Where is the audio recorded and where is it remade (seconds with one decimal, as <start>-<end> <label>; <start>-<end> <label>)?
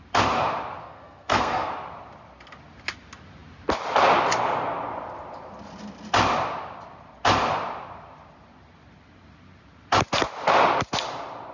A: 0.0-0.8 recorded; 0.8-1.7 remade; 1.7-11.5 recorded